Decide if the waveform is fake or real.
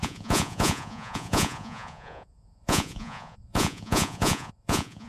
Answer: fake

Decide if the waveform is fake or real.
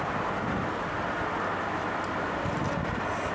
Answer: real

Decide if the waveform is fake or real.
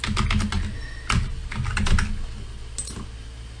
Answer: real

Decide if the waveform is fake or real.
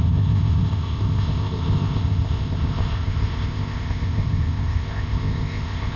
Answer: fake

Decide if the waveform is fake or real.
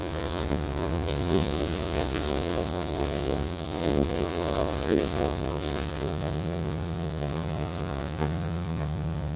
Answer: fake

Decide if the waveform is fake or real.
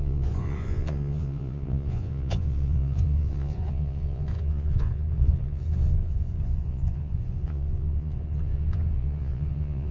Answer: fake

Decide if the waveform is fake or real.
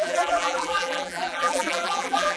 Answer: fake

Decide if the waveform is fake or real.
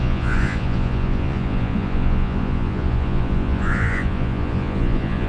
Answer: fake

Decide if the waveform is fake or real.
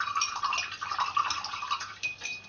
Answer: real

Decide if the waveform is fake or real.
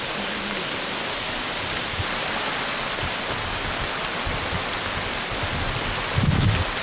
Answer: real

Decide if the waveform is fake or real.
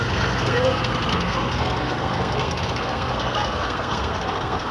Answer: fake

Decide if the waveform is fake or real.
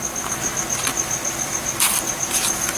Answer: real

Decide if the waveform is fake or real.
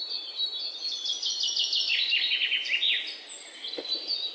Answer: real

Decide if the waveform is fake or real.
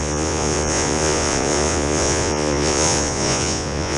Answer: fake